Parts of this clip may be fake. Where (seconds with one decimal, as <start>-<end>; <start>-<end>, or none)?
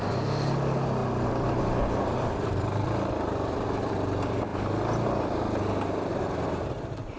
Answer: 1.0-3.9